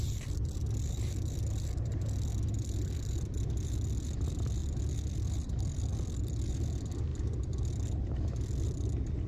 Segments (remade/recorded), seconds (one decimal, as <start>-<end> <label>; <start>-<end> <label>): 0.0-9.3 remade